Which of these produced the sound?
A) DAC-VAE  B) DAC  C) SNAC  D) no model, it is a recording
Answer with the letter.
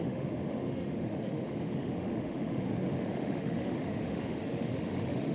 A